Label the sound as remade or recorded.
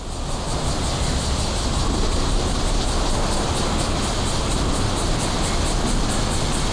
recorded